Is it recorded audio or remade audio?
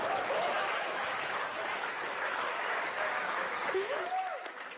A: remade